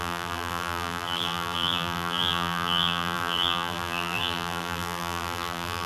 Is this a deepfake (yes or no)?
yes